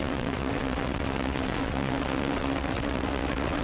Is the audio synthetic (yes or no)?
yes